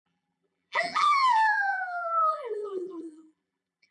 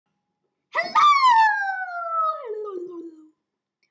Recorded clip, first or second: second